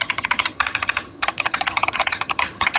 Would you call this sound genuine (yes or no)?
no